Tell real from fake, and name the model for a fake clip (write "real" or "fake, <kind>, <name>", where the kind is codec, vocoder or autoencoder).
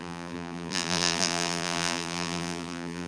fake, vocoder, BigVGAN v2